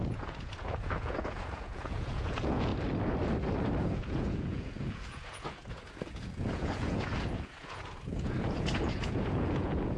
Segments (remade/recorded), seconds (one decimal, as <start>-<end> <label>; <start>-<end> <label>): 0.0-2.7 remade; 2.7-3.8 recorded; 3.8-10.0 remade